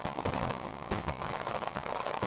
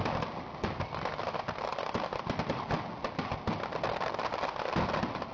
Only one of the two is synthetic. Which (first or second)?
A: first